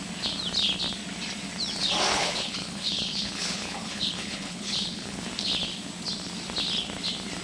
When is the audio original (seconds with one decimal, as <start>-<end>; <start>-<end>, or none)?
0.0-2.1; 5.2-7.4